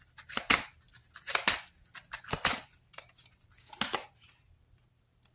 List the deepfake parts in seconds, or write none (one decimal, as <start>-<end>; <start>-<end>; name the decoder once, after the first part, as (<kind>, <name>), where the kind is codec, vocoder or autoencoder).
3.9-4.6 (vocoder, BigVGAN v2)

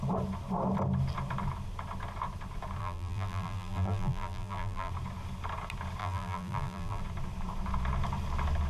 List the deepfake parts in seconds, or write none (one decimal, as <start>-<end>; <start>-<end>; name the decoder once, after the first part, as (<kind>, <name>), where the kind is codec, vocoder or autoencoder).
2.8-4.9 (vocoder, BigVGAN v2); 6.0-7.0

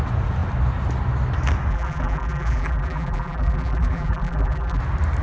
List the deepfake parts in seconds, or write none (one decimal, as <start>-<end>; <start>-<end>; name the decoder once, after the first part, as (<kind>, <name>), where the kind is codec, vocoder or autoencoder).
1.7-4.8 (vocoder, BigVGAN v2)

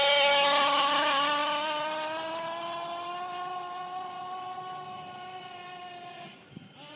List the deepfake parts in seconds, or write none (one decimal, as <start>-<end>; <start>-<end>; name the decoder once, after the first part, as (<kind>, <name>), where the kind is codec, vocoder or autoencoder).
none

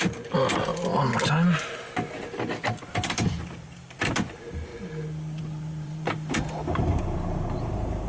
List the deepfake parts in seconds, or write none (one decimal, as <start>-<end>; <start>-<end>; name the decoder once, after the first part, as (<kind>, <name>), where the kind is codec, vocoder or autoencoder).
0.0-0.7 (vocoder, BigVGAN v2); 3.3-4.7; 5.4-8.1